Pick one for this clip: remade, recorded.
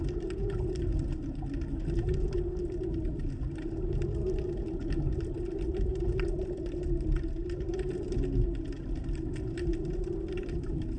recorded